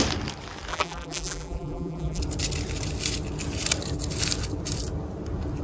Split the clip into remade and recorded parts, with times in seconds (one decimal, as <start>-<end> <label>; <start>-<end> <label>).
0.0-0.7 recorded; 0.7-2.2 remade; 2.2-5.6 recorded